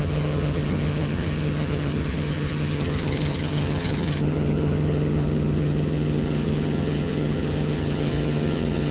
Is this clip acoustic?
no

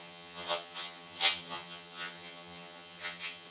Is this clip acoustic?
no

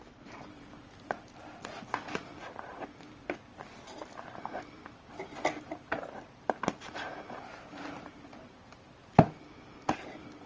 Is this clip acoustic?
yes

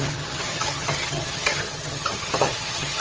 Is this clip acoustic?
no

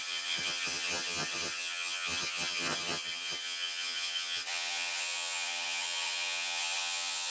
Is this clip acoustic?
no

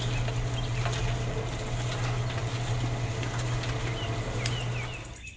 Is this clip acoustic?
yes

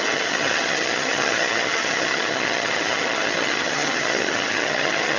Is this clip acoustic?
no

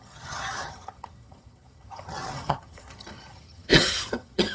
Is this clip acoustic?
no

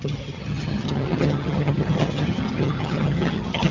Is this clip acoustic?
no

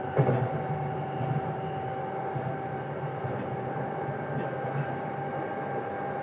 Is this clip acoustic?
yes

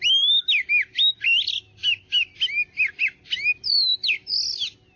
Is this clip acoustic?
yes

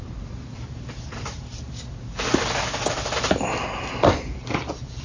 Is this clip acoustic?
yes